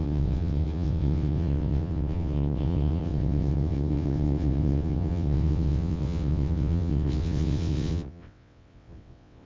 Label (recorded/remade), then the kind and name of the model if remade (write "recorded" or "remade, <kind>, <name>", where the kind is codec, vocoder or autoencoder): remade, vocoder, WaveNeXt